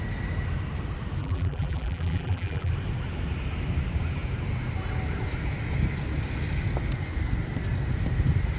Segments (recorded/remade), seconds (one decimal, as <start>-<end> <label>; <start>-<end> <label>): 0.0-1.2 recorded; 1.2-2.7 remade; 2.7-8.6 recorded